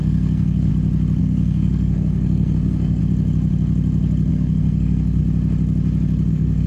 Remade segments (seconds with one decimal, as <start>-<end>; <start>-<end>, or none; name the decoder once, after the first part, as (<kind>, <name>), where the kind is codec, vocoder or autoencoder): 0.0-0.7 (codec, SNAC); 1.2-3.0; 4.3-5.2; 6.3-6.7